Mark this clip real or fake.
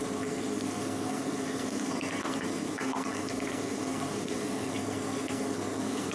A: fake